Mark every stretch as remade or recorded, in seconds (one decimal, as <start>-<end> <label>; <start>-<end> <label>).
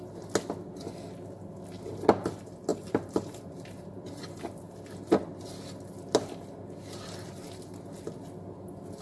0.0-2.7 recorded; 2.7-4.4 remade; 4.4-9.0 recorded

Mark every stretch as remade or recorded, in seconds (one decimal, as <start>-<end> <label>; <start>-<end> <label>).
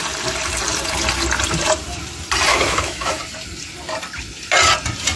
0.0-2.5 recorded; 2.5-3.2 remade; 3.2-5.2 recorded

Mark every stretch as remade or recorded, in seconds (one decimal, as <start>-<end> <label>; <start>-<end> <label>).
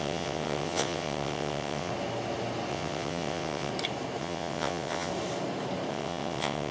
0.0-1.9 remade; 1.9-2.7 recorded; 2.7-3.7 remade; 3.7-4.2 recorded; 4.2-5.1 remade; 5.1-5.9 recorded; 5.9-6.7 remade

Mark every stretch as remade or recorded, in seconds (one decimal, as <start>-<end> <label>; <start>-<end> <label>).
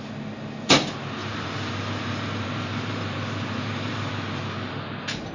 0.0-1.2 recorded; 1.2-4.1 remade; 4.1-5.3 recorded